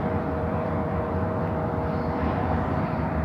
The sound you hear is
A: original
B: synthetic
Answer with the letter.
B